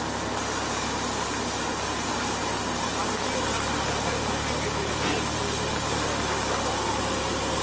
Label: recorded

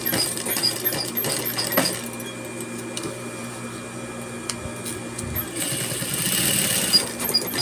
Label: recorded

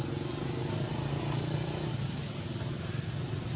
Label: recorded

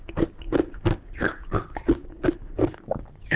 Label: remade